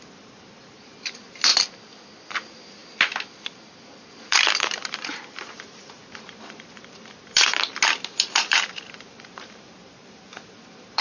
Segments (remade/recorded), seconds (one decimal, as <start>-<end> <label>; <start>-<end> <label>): 0.0-1.5 remade; 1.5-2.3 recorded; 2.3-2.8 remade; 2.8-3.8 recorded; 3.8-7.7 remade; 7.7-8.3 recorded; 8.3-11.0 remade